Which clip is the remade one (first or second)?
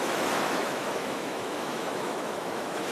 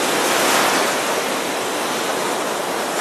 first